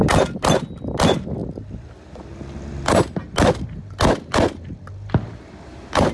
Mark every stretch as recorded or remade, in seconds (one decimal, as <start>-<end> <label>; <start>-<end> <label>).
0.0-6.1 recorded